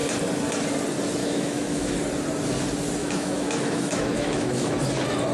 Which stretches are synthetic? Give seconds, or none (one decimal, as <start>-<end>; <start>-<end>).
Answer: 1.2-1.9; 3.0-4.7